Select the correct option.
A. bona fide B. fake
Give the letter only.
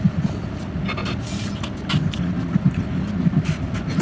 A